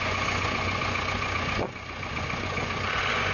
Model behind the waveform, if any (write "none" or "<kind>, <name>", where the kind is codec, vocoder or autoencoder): vocoder, Vocos